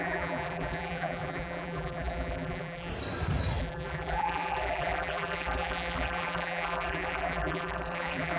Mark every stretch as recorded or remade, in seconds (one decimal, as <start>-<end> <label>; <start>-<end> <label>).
0.0-2.9 remade; 2.9-3.6 recorded; 3.6-8.4 remade